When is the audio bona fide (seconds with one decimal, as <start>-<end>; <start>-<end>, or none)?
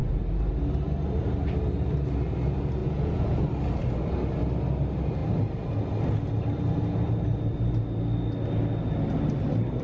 0.0-2.8; 3.4-9.8